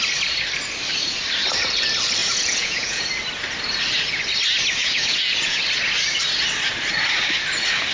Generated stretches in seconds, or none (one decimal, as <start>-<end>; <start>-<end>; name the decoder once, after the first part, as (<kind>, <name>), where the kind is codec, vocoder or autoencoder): 2.2-3.0 (vocoder, Vocos); 4.8-5.6